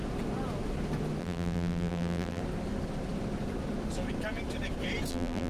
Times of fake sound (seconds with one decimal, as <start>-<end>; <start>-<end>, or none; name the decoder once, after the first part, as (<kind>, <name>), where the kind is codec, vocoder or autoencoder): 1.2-2.4 (vocoder, BigVGAN v2); 5.1-5.5